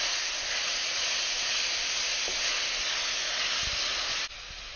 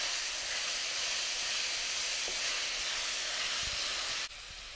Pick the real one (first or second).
first